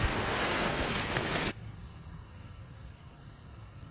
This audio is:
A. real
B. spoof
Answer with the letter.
B